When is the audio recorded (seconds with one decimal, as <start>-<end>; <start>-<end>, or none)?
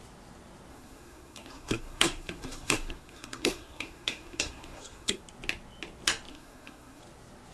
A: 0.0-0.7; 5.2-6.3; 7.0-7.5